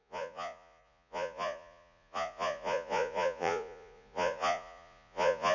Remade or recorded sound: remade